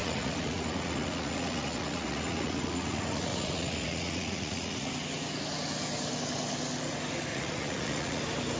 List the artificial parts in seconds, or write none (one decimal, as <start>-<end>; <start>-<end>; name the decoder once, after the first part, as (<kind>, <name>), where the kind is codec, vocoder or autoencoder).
0.0-4.9 (vocoder, Vocos); 7.3-8.2